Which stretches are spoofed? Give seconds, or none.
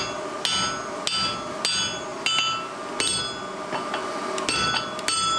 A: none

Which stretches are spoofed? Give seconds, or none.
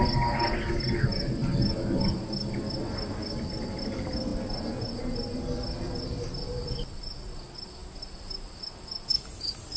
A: none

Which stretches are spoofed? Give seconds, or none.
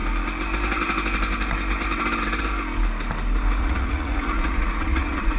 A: 3.6-5.4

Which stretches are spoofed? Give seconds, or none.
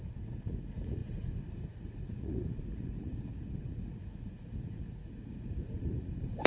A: 0.0-6.5